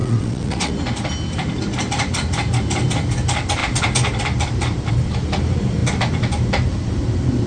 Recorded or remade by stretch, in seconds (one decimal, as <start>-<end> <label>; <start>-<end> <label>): 0.0-0.7 remade; 0.7-7.5 recorded